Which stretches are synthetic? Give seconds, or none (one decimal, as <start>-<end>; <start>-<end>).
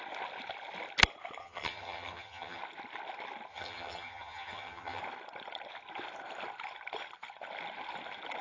1.4-2.6; 3.5-5.0